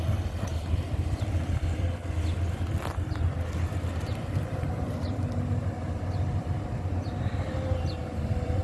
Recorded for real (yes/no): no